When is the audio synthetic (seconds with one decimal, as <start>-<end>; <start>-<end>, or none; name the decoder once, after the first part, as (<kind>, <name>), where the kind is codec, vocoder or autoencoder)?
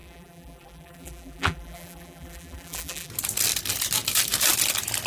0.0-3.1 (vocoder, BigVGAN v2)